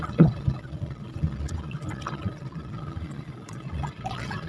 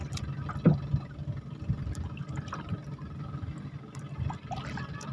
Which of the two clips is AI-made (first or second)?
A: first